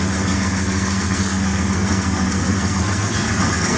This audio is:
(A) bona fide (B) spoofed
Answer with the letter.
B